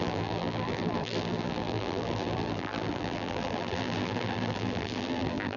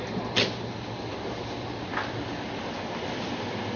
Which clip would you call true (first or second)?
second